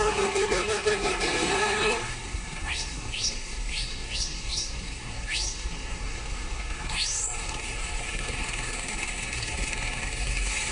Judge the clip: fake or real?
fake